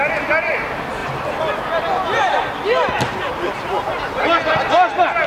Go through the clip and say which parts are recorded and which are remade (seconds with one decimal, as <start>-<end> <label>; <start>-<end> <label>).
0.0-5.3 recorded